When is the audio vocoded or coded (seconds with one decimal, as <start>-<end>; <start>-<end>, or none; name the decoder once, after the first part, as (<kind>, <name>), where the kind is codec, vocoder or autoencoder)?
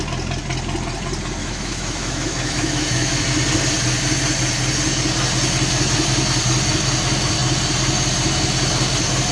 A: 1.4-3.2 (autoencoder, DAC-VAE)